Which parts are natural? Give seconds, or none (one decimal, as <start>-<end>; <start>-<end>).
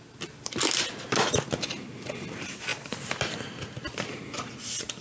0.0-5.0